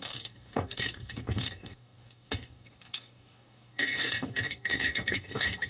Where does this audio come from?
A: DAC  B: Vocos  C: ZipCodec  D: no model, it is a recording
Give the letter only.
A